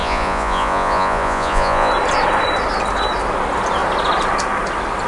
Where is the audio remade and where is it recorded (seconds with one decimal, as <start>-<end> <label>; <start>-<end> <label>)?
0.0-1.9 remade; 1.9-5.1 recorded